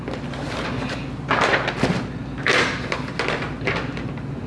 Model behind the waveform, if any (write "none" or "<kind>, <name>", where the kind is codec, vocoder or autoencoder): none